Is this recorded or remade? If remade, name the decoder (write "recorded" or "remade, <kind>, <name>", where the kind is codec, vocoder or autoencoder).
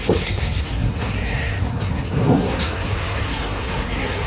remade, codec, SNAC